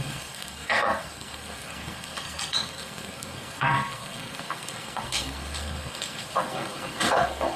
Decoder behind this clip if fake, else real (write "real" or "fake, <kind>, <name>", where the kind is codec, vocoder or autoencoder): fake, codec, SNAC